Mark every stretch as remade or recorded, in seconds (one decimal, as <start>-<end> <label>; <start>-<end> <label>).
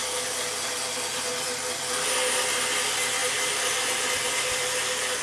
0.0-5.2 recorded